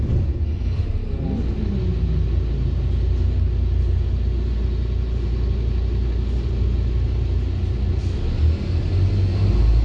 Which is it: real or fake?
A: real